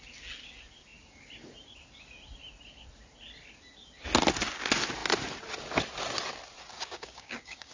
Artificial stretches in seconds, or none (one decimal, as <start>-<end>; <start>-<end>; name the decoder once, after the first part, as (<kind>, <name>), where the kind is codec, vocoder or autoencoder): 6.7-7.7 (codec, DAC)